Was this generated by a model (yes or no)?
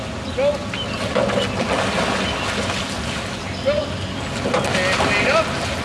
no